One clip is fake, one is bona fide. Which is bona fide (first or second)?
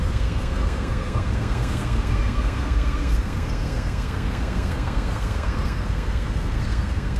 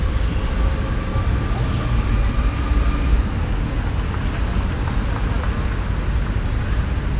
second